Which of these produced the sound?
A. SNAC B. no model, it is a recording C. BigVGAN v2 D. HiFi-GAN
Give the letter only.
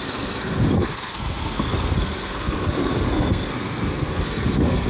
A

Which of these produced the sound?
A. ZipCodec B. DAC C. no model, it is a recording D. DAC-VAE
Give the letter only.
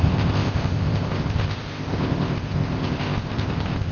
A